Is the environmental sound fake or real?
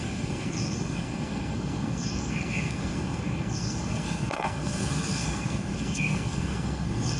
fake